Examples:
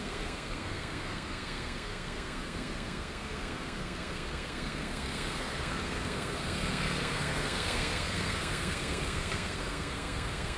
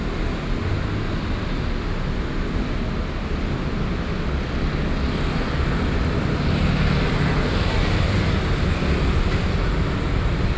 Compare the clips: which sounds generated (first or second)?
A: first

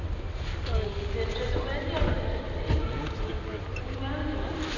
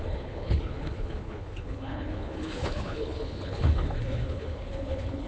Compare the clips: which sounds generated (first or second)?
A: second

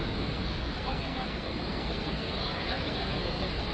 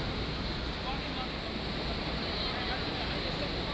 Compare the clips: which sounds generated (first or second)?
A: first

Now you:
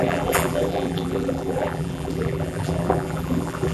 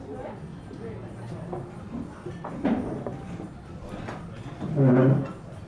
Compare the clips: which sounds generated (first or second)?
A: first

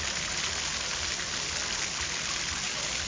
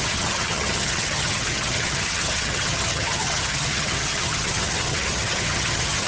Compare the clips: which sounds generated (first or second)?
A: second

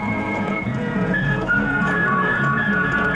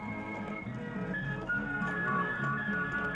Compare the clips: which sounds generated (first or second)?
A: first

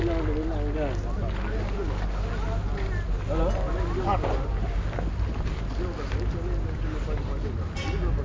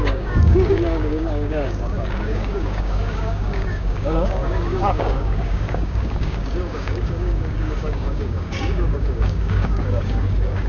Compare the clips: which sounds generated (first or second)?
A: second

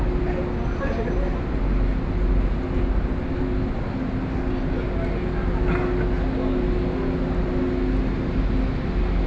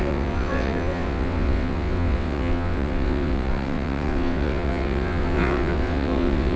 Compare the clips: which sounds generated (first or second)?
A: second